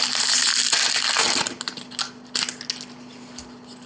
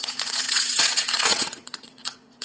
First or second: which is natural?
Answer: first